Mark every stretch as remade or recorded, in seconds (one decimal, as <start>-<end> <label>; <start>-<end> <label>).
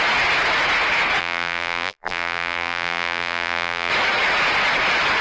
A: 0.0-1.2 recorded; 1.2-3.9 remade; 3.9-5.2 recorded